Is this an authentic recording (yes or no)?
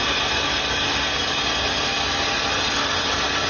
yes